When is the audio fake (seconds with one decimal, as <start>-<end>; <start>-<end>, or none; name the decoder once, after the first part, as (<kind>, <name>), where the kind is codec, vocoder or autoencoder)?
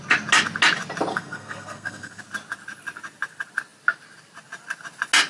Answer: 1.1-2.2 (codec, SNAC)